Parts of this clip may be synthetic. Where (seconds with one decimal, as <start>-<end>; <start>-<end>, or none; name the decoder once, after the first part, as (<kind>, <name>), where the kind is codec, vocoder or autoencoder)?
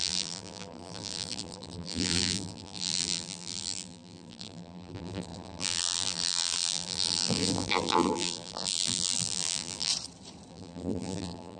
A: 0.0-9.9 (vocoder, BigVGAN v2); 10.5-11.6